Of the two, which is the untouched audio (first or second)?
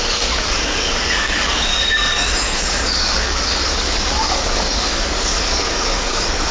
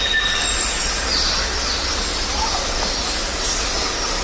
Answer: second